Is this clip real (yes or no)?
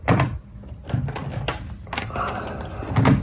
yes